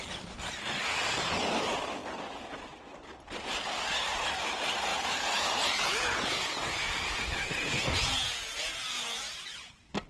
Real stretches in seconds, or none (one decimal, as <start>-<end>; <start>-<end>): 0.0-4.9; 9.7-10.1